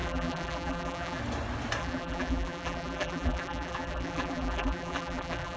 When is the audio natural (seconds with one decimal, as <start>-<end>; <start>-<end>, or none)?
1.2-1.8